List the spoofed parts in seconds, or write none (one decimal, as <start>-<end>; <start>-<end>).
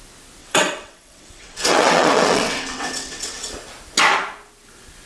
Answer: 0.4-3.5